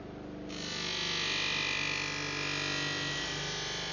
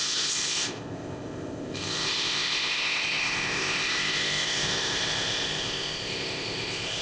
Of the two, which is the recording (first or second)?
first